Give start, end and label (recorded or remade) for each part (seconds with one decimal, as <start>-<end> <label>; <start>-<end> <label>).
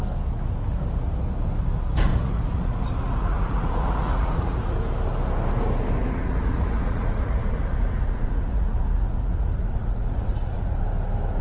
0.0-2.1 recorded; 2.1-4.7 remade; 4.7-6.0 recorded; 6.0-10.8 remade; 10.8-11.4 recorded